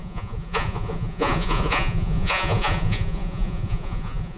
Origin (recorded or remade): remade